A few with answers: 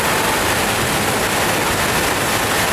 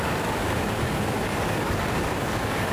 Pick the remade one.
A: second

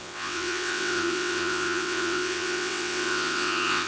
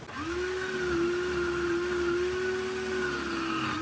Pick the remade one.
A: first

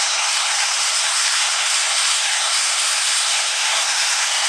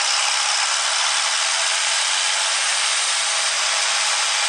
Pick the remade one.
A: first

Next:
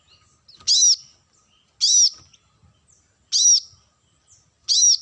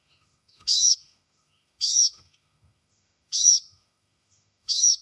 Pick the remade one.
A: second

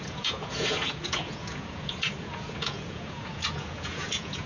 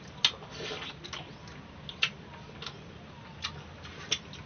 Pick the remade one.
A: first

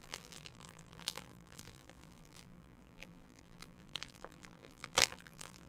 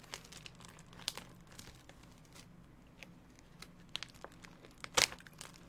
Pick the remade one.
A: first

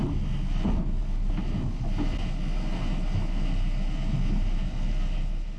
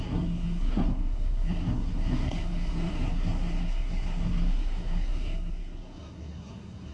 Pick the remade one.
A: second